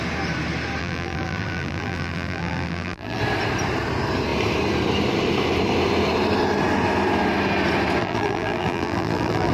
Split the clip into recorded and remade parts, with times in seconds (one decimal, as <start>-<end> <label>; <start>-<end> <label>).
0.0-0.8 recorded; 0.8-3.2 remade; 3.2-8.0 recorded; 8.0-9.5 remade